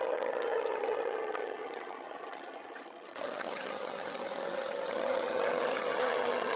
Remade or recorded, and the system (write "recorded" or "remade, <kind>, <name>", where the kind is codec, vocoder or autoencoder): remade, vocoder, HiFi-GAN